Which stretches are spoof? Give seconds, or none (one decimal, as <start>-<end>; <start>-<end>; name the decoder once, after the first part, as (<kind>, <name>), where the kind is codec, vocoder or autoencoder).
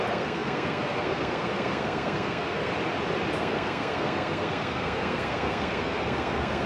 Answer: 0.0-2.7 (codec, SNAC); 3.4-6.7